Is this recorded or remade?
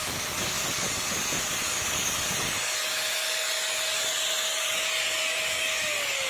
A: remade